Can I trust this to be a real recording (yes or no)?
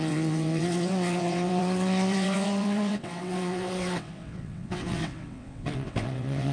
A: no